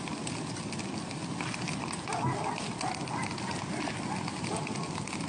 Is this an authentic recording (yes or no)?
yes